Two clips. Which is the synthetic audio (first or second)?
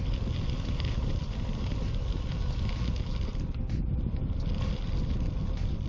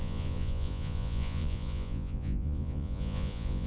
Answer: second